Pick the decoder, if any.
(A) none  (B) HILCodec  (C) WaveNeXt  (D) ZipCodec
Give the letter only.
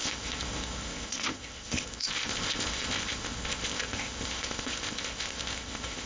D